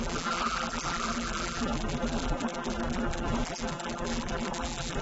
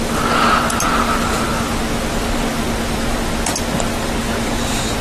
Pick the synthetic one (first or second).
first